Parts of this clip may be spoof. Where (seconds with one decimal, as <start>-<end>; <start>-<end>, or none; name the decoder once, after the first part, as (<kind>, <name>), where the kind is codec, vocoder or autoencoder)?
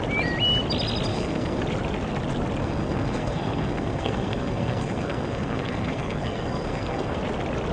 1.1-1.6 (codec, SNAC); 2.6-7.2